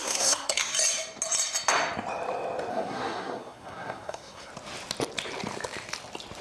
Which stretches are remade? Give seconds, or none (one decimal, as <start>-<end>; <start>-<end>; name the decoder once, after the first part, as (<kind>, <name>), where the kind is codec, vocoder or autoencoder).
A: 0.0-0.7 (codec, SNAC); 2.7-4.5